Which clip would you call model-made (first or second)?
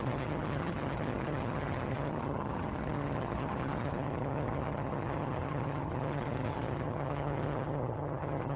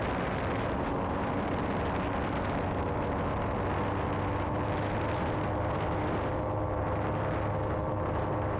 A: first